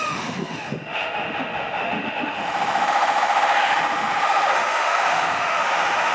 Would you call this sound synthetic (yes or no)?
yes